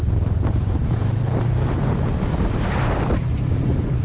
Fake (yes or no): yes